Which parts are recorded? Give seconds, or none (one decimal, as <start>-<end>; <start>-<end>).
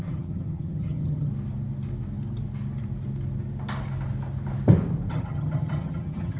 1.3-5.1